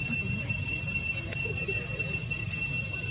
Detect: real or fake real